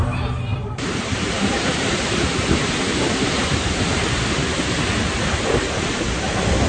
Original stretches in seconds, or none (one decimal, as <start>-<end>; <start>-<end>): 0.0-0.5; 3.7-6.7